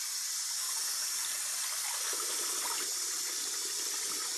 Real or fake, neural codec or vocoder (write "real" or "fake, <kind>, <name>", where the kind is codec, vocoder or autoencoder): real